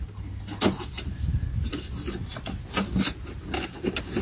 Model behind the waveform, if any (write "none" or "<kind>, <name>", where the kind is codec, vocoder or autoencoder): none